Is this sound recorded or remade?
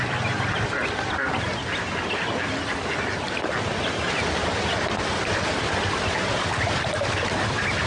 recorded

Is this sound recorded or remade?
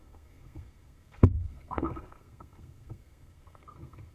remade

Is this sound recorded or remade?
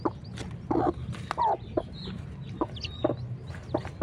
recorded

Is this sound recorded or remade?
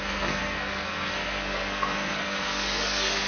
remade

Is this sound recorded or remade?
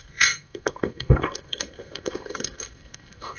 remade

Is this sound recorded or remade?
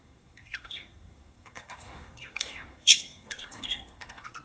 remade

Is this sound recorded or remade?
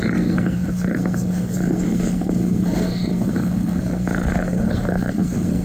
remade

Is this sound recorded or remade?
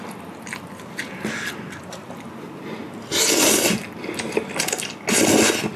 recorded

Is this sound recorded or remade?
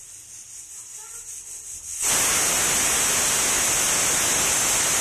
recorded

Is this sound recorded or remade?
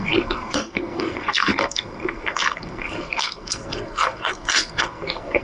remade